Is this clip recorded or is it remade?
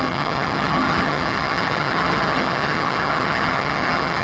remade